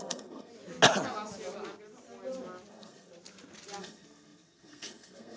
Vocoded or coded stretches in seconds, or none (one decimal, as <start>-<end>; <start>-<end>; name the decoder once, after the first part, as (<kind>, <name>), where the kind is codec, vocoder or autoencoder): 0.0-0.5 (codec, SNAC); 2.7-3.1; 3.8-5.4